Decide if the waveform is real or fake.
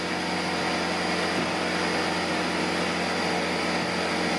real